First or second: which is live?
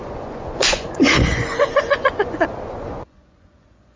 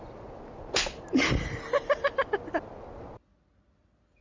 second